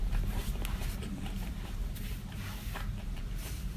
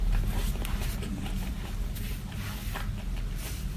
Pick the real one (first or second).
second